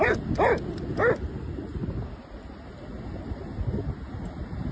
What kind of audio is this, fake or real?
real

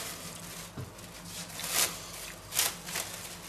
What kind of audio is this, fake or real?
real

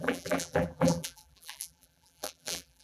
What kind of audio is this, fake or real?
fake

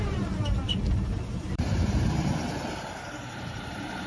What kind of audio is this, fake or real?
fake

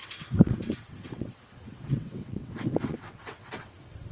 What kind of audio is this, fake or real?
fake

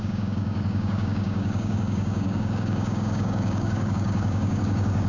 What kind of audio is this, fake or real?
fake